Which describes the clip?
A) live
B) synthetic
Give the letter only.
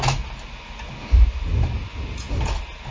A